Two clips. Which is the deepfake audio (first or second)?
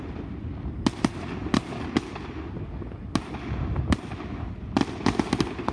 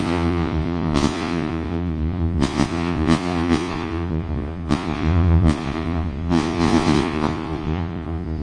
second